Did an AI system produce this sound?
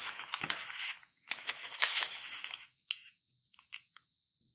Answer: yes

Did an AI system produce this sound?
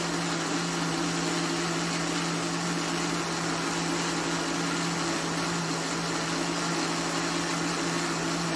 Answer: no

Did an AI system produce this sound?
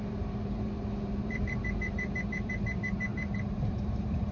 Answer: yes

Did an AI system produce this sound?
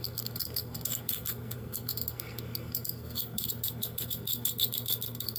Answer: yes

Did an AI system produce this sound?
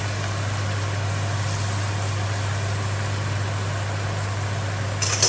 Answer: no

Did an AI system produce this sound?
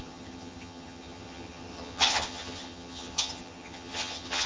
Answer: yes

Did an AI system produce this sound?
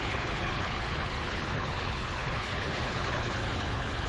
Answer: yes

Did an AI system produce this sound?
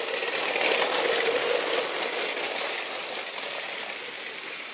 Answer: no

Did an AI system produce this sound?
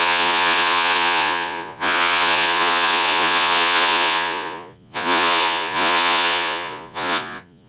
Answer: yes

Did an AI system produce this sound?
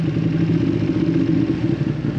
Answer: no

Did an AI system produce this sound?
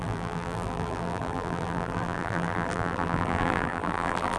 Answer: yes